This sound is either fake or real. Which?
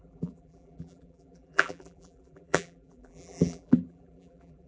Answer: fake